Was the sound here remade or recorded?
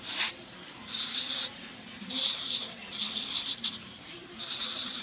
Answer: remade